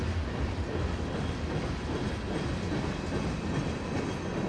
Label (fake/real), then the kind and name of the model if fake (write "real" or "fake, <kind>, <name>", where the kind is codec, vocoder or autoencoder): real